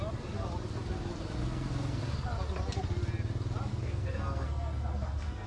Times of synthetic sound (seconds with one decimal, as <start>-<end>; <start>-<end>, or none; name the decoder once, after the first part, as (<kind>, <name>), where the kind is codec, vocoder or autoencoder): 1.4-2.0 (codec, SNAC); 3.7-5.5